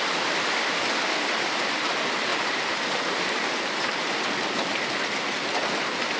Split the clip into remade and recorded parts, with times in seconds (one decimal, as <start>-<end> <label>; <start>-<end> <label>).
0.0-2.3 recorded; 2.3-3.5 remade; 3.5-6.2 recorded